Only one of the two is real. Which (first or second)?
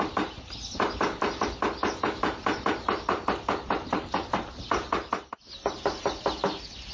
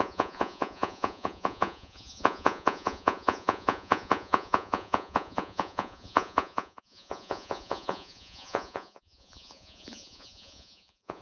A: first